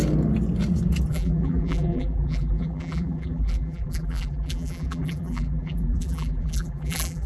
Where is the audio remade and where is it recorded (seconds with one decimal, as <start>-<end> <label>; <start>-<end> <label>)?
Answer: 0.0-1.1 recorded; 1.1-7.3 remade